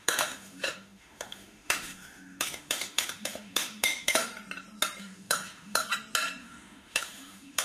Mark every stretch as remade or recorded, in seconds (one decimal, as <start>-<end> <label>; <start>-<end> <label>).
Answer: 0.0-4.3 remade; 4.3-5.0 recorded; 5.0-5.8 remade; 5.8-6.4 recorded; 6.4-7.6 remade